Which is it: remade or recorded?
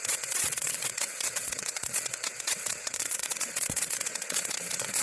remade